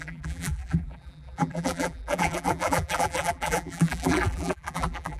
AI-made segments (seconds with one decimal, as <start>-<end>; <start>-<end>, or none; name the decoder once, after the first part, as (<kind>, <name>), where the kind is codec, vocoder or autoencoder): 0.0-5.2 (vocoder, BigVGAN v2)